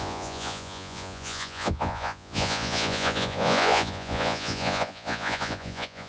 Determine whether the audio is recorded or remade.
remade